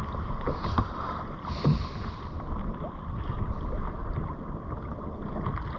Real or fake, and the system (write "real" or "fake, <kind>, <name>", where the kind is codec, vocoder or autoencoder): real